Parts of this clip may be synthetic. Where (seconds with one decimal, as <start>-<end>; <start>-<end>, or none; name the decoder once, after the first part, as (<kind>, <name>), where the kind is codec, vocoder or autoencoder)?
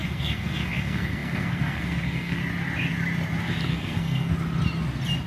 0.0-2.4 (codec, SNAC); 3.7-4.3